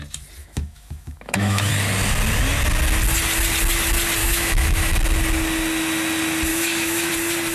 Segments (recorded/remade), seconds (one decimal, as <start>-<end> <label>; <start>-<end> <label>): 0.0-0.4 recorded; 0.4-1.7 remade; 1.7-4.2 recorded; 4.2-4.9 remade; 4.9-6.5 recorded; 6.5-7.1 remade; 7.1-7.5 recorded